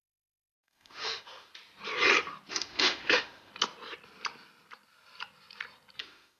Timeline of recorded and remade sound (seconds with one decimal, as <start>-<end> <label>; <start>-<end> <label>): 0.0-1.5 remade; 1.5-2.5 recorded; 2.5-3.5 remade; 3.5-6.0 recorded; 6.0-6.4 remade